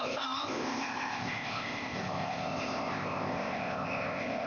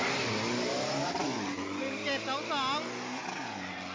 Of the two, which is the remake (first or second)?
first